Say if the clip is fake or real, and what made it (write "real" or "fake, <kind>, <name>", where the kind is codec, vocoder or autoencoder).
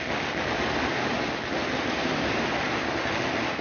real